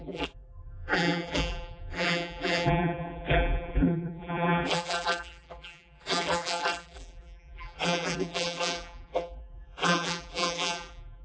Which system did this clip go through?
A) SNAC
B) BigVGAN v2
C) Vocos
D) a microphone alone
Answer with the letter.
B